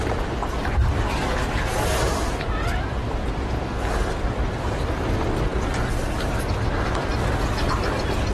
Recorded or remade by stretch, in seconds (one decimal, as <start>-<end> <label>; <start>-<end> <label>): 0.0-5.5 remade; 5.5-7.6 recorded; 7.6-8.3 remade